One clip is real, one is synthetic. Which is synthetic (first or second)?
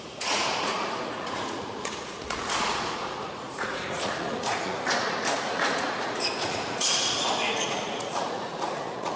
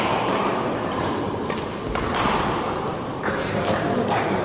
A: first